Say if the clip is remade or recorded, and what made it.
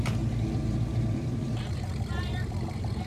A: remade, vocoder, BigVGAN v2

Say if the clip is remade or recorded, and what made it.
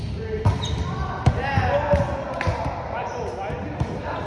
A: recorded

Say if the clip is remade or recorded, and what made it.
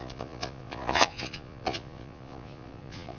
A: remade, vocoder, Vocos